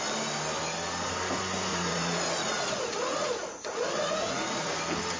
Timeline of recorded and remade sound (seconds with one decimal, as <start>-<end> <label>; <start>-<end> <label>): 0.0-1.7 recorded; 1.7-4.8 remade; 4.8-5.2 recorded